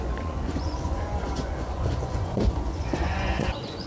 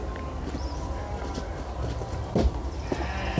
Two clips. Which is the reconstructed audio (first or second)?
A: first